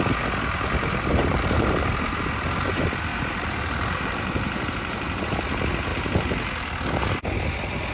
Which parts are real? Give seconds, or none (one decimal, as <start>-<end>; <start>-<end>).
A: 0.0-1.3; 2.1-3.1; 5.2-7.9